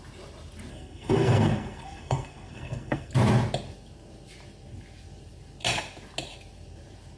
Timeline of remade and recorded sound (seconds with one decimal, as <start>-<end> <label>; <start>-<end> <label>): 0.0-0.7 recorded; 0.7-3.1 remade; 3.1-7.2 recorded